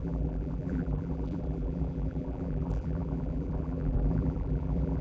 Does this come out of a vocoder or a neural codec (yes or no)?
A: yes